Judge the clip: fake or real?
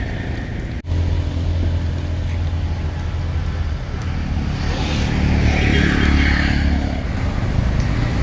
real